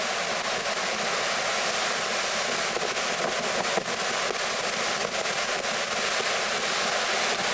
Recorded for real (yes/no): yes